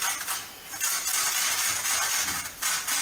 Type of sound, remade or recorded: recorded